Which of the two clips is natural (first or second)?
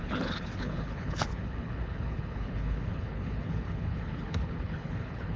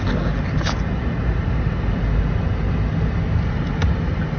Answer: second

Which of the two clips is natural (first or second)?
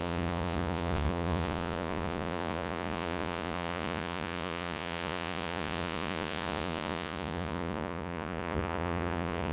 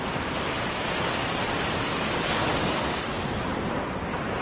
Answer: second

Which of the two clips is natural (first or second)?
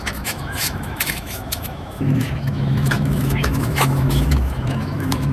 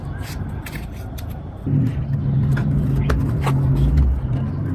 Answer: second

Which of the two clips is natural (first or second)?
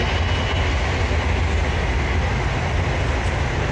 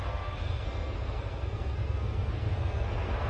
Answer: first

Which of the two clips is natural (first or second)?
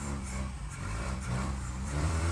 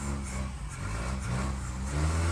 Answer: second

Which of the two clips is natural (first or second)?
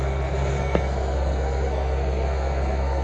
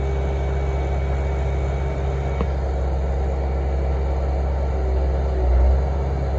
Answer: second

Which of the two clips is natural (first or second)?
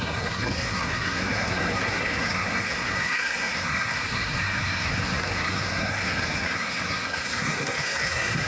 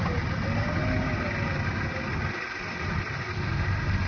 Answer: second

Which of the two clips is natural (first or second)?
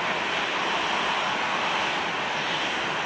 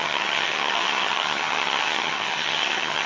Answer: first